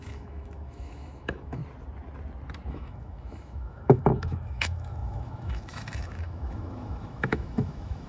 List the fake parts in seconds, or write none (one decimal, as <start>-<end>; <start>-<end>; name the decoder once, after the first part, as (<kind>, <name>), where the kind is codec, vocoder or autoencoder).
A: 0.0-1.6 (autoencoder, DAC-VAE); 2.7-8.1